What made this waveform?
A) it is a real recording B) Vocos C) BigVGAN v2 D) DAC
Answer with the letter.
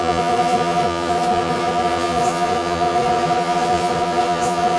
B